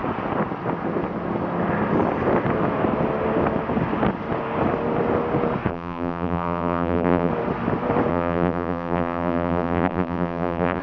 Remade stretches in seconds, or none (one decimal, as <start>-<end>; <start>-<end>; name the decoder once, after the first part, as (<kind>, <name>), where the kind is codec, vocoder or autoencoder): 5.7-7.3 (vocoder, BigVGAN v2); 8.1-10.8